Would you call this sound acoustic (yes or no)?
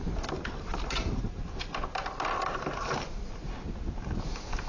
yes